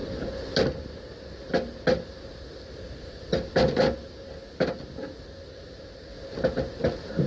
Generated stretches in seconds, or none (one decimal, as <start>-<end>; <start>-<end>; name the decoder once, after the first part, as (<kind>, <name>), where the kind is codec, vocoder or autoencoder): none